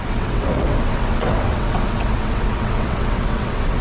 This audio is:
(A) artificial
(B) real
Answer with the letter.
A